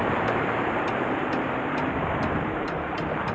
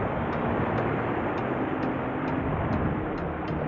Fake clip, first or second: first